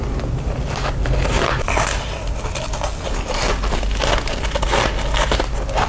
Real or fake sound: real